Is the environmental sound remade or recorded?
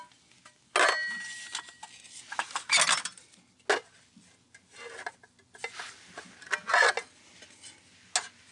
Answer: recorded